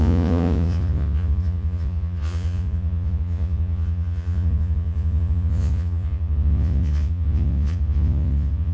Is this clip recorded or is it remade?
remade